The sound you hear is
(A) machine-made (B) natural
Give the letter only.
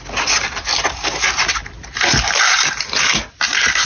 B